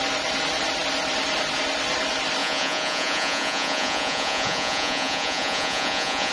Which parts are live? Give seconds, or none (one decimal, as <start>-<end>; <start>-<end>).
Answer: 0.0-2.4